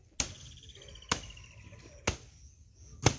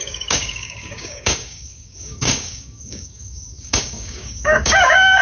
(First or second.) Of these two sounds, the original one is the first